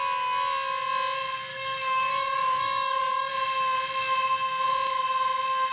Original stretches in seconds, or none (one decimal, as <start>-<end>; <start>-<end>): 0.0-1.5; 3.3-5.7